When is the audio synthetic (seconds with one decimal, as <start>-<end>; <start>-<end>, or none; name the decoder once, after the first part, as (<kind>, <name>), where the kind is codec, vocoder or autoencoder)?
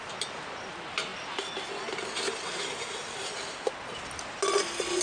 none